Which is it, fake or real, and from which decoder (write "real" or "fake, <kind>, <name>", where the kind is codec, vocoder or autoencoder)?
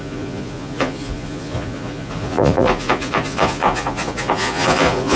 fake, vocoder, Vocos